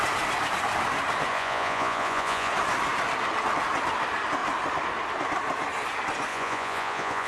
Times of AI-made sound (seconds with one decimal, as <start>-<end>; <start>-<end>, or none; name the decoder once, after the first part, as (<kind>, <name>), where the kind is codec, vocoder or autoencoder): 1.3-2.5 (vocoder, Vocos); 6.3-7.3